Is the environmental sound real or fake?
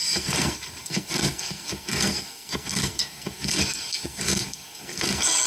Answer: fake